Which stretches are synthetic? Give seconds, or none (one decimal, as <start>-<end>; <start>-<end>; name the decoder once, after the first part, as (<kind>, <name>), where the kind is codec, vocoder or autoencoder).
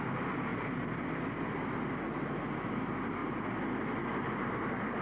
none